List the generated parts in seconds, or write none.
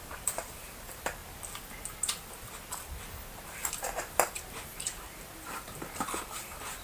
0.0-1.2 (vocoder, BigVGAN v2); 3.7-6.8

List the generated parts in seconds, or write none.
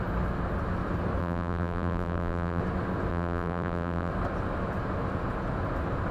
1.2-2.6 (vocoder, BigVGAN v2); 3.1-4.1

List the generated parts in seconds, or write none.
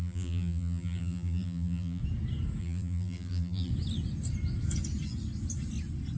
0.0-2.0 (vocoder, BigVGAN v2); 2.6-3.7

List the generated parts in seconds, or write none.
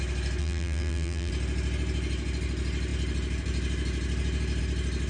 0.4-1.3 (vocoder, BigVGAN v2)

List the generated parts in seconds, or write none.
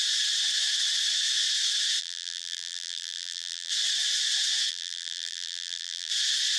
2.0-3.7 (vocoder, BigVGAN v2); 4.7-6.1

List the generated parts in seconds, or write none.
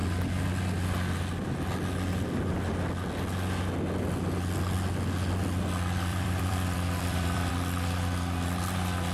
6.1-7.5 (vocoder, BigVGAN v2)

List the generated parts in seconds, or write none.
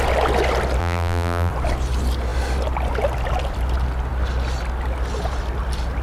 0.8-1.5 (vocoder, BigVGAN v2)